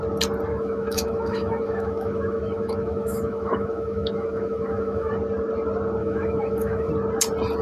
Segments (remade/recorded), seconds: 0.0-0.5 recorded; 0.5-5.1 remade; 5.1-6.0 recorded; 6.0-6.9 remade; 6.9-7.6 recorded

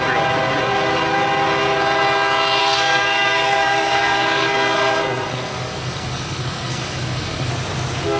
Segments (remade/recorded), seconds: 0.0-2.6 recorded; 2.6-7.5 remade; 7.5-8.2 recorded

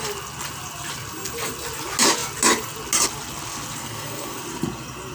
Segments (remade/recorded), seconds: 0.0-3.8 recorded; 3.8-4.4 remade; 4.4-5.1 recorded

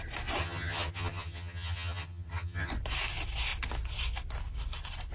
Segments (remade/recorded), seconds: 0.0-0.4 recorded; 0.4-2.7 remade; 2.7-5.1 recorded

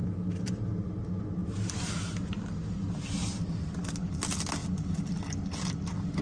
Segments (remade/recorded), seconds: 0.0-6.2 recorded